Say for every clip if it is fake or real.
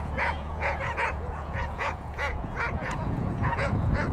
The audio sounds fake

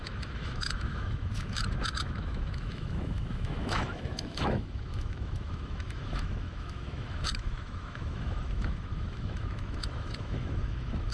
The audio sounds fake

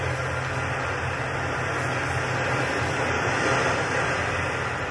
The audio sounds real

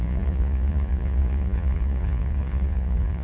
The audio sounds fake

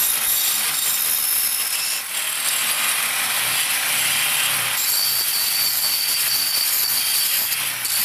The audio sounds real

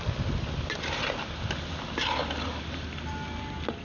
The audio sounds real